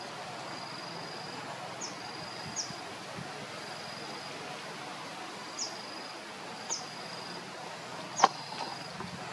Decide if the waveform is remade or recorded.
recorded